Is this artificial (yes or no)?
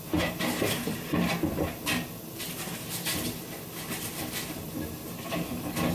no